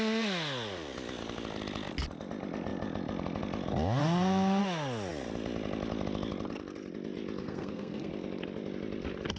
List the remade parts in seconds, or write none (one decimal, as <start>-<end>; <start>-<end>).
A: 4.0-4.6; 7.4-8.1